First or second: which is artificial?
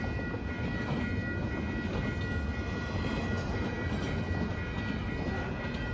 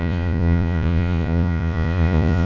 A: second